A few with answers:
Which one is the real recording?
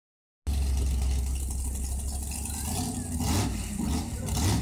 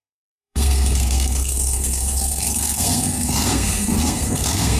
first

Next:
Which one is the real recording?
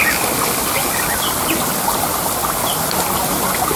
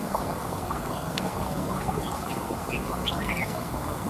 first